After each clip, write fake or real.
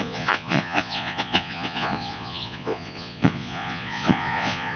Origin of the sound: fake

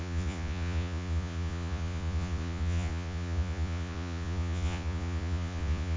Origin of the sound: fake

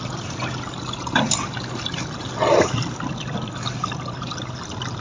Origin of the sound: real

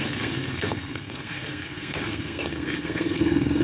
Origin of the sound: fake